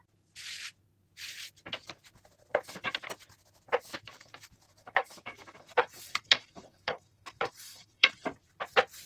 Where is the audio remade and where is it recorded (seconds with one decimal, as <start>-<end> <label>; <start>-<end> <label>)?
0.0-4.1 recorded; 4.1-8.1 remade; 8.1-9.1 recorded